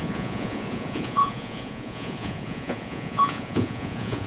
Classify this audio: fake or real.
fake